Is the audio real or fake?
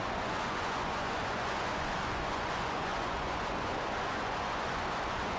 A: fake